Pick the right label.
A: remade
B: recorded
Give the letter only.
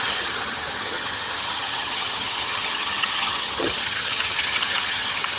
A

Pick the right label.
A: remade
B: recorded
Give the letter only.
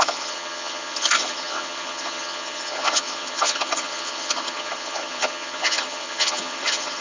A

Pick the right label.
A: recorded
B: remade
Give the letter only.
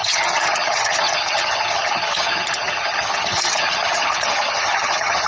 B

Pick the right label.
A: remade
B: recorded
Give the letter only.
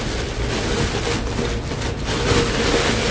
B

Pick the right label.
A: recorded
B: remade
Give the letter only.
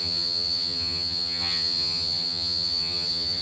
B